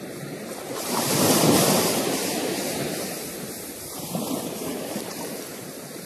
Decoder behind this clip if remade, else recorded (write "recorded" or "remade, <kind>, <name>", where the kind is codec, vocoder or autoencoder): remade, vocoder, BigVGAN v2